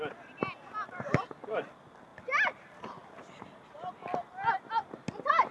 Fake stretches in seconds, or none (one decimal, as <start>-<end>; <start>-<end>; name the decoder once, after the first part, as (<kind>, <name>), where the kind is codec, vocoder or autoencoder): none